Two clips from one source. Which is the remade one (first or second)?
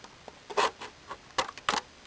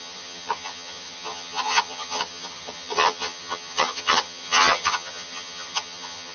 second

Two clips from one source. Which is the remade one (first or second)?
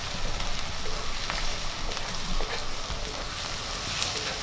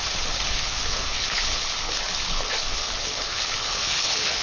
second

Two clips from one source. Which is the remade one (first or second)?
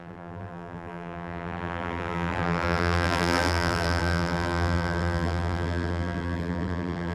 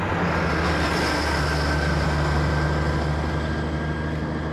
first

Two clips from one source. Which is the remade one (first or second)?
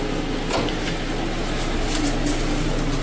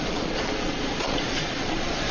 second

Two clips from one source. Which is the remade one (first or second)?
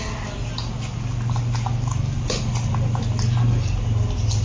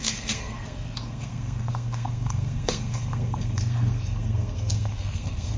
second